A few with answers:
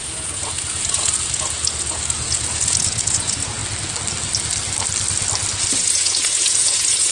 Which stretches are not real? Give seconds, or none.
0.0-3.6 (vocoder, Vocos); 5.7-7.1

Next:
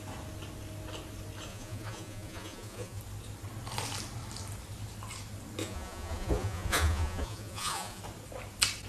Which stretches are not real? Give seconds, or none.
1.5-3.0 (vocoder, Vocos); 5.6-8.0

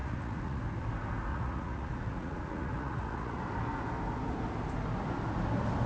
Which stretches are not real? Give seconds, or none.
0.0-0.6 (vocoder, Vocos); 1.3-3.4

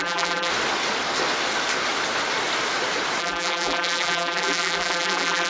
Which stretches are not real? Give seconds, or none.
0.0-0.5 (vocoder, BigVGAN v2); 3.2-5.5

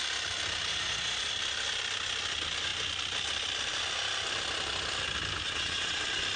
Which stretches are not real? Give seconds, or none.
0.7-1.3 (vocoder, Vocos); 5.4-6.0